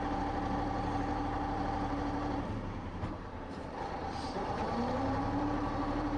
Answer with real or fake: fake